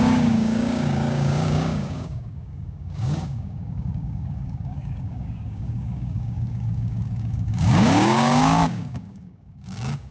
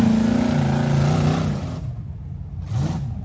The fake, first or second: first